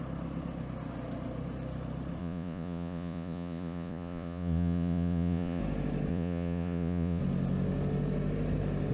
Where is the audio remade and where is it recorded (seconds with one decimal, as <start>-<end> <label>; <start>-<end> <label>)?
0.0-2.2 recorded; 2.2-5.6 remade; 5.6-6.1 recorded; 6.1-7.2 remade; 7.2-8.9 recorded